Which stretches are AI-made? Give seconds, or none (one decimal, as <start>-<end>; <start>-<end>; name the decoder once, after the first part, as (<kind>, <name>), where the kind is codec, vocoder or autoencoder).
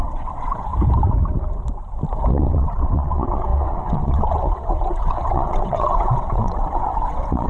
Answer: 0.0-0.7 (vocoder, WaveNeXt); 2.3-7.5